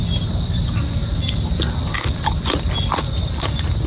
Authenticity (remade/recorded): recorded